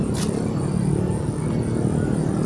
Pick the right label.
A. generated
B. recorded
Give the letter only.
B